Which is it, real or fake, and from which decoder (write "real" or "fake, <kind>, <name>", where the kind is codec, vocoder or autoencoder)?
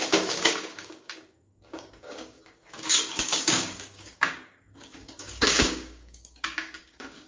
fake, codec, DAC